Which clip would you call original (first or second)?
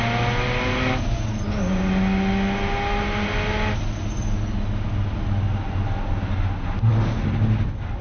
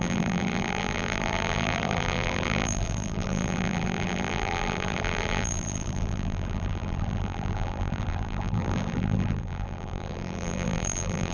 first